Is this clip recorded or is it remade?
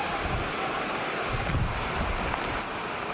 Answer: recorded